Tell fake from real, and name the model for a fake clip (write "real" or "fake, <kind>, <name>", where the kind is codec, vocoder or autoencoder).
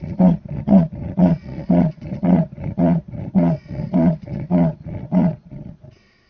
fake, vocoder, Vocos